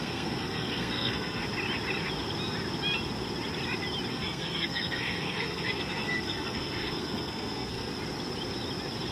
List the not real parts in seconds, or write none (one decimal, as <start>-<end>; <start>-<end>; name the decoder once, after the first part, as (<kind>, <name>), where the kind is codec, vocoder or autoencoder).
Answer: 0.0-1.4 (codec, SNAC); 4.1-7.9